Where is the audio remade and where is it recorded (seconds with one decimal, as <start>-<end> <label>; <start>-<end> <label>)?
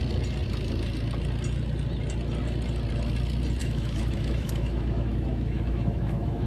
0.0-3.6 recorded; 3.6-6.5 remade